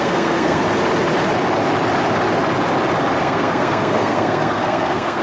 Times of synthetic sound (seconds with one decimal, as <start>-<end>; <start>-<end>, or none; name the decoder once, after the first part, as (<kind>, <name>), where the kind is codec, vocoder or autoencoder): 0.0-0.6 (codec, SNAC); 3.2-5.2